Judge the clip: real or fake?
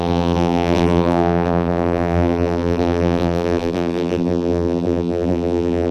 fake